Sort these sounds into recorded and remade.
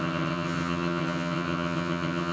remade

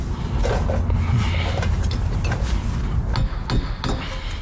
recorded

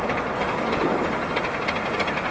recorded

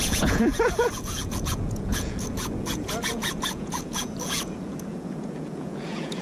remade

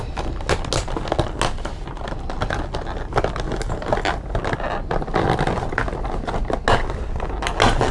recorded